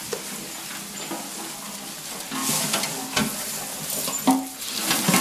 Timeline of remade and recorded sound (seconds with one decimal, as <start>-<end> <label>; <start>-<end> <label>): 0.0-0.5 remade; 0.5-5.2 recorded